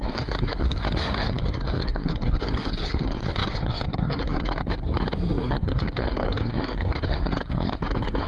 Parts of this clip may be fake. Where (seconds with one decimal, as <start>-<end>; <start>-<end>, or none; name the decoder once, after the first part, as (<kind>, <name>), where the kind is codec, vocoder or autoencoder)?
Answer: 0.0-8.3 (codec, SNAC)